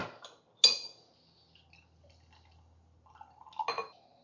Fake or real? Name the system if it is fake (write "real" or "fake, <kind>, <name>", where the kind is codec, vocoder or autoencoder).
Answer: real